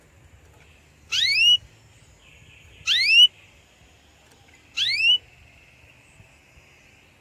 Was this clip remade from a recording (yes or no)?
no